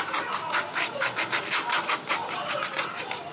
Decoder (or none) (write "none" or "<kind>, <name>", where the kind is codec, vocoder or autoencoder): none